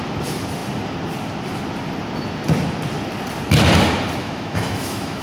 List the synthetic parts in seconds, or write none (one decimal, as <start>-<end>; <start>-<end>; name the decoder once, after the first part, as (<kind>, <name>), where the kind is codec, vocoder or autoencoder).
4.2-5.2 (autoencoder, DAC-VAE)